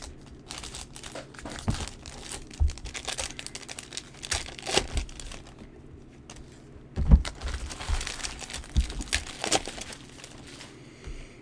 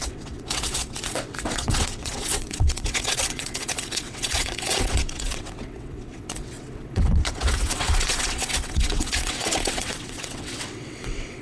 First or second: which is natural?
first